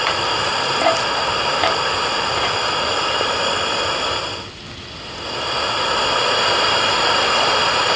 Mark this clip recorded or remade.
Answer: recorded